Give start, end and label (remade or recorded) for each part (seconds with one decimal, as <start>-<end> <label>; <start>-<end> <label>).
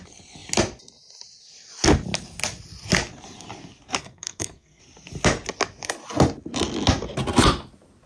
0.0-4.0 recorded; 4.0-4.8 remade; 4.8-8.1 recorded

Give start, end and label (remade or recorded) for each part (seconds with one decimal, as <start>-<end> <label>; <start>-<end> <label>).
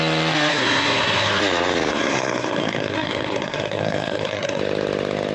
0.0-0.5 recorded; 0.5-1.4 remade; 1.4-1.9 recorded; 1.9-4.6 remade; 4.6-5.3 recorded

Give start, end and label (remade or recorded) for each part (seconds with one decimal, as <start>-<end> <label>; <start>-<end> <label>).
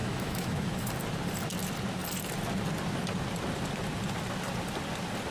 0.0-0.9 remade; 0.9-5.3 recorded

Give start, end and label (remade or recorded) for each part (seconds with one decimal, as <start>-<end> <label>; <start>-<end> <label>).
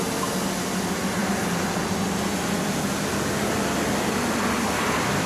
0.0-5.3 recorded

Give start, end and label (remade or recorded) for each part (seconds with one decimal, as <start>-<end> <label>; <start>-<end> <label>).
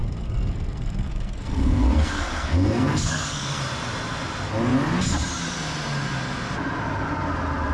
0.0-3.6 remade; 3.6-7.7 recorded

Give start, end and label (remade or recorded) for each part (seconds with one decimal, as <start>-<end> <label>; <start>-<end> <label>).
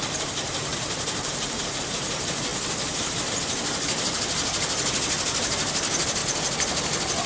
0.0-0.7 recorded; 0.7-2.1 remade; 2.1-7.3 recorded